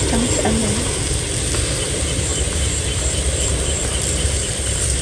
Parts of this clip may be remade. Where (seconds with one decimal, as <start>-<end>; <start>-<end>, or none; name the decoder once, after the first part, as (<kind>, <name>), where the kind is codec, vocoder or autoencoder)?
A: 0.6-1.2 (vocoder, BigVGAN v2); 2.3-4.5